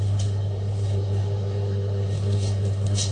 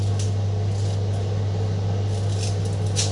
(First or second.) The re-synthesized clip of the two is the first